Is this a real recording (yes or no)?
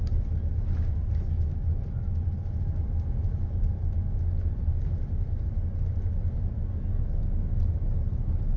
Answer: yes